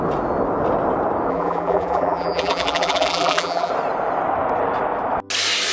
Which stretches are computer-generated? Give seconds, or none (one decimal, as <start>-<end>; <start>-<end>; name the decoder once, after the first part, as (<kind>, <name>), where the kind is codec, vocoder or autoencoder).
1.3-3.7 (vocoder, BigVGAN v2)